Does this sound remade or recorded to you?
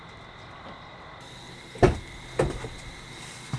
recorded